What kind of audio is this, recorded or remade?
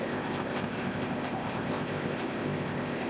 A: remade